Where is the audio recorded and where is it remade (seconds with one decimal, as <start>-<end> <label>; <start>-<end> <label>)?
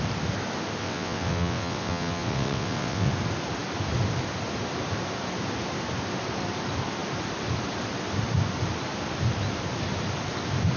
0.0-0.8 recorded; 0.8-3.1 remade; 3.1-10.8 recorded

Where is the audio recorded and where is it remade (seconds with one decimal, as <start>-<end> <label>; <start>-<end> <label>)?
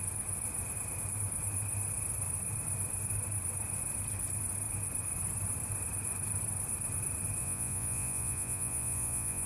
0.0-7.4 recorded; 7.4-9.5 remade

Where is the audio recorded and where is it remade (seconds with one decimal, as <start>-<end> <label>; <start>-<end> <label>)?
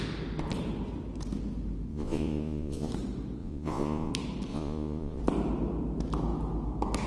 0.0-1.9 recorded; 1.9-2.9 remade; 2.9-3.4 recorded; 3.4-4.1 remade; 4.1-4.5 recorded; 4.5-5.2 remade; 5.2-7.1 recorded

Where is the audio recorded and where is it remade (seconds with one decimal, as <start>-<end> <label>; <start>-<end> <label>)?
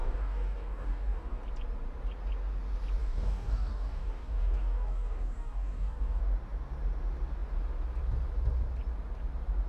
0.0-1.4 remade; 1.4-3.0 recorded; 3.0-6.2 remade; 6.2-9.7 recorded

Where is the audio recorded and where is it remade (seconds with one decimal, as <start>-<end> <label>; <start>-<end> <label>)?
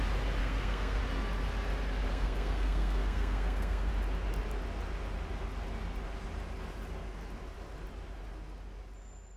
0.0-0.4 recorded; 0.4-1.0 remade; 1.0-2.1 recorded; 2.1-3.9 remade; 3.9-9.4 recorded